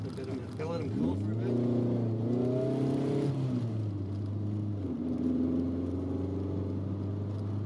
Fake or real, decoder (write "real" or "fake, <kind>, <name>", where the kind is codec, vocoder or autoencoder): real